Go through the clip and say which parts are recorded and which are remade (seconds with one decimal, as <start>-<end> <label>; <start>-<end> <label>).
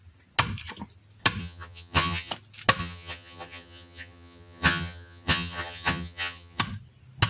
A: 0.0-1.4 recorded; 1.4-2.3 remade; 2.3-2.8 recorded; 2.8-6.6 remade; 6.6-7.3 recorded